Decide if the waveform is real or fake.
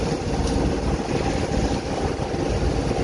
real